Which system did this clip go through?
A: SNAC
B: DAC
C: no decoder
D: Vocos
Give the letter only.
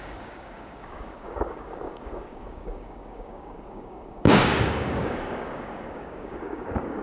B